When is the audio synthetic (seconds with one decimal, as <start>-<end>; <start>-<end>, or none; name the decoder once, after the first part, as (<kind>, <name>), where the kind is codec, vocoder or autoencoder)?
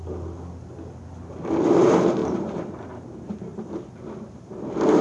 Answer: 2.2-3.7 (vocoder, BigVGAN v2)